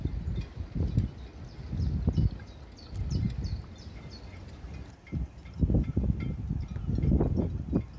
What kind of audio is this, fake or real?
real